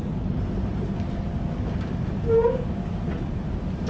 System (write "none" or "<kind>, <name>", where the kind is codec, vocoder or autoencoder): none